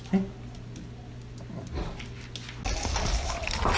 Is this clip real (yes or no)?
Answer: yes